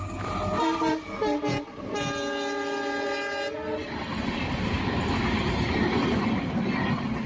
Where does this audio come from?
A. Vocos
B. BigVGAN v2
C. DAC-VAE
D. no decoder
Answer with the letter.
D